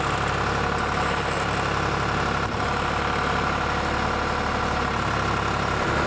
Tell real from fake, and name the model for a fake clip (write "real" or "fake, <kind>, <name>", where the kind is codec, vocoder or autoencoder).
real